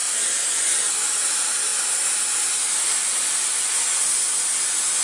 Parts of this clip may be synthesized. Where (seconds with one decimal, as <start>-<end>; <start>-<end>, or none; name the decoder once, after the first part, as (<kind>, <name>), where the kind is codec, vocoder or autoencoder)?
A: none

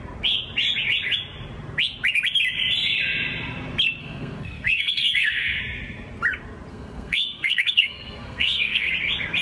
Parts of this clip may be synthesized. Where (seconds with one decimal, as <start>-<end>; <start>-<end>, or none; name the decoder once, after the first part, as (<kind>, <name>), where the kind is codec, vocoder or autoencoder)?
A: 4.0-5.6 (codec, SNAC); 6.7-8.9

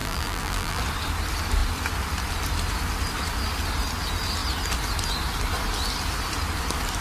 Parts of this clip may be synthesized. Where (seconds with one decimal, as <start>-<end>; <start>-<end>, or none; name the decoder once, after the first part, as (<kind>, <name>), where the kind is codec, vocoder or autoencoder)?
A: 0.0-0.8 (vocoder, BigVGAN v2)